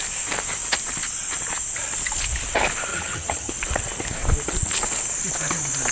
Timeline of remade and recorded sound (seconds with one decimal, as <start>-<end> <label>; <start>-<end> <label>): 0.0-2.9 recorded; 2.9-3.5 remade; 3.5-5.9 recorded